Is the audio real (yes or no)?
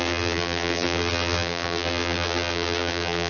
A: no